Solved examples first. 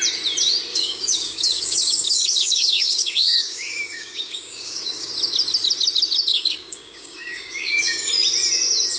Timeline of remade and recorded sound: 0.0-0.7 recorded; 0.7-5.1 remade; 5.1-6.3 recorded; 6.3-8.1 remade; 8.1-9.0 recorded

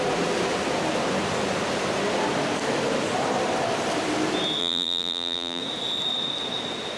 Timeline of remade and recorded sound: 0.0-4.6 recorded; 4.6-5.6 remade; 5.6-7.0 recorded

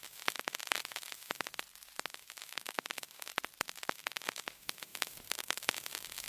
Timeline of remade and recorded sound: 0.0-1.5 remade; 1.5-2.1 recorded; 2.1-3.3 remade; 3.3-3.9 recorded; 3.9-6.3 remade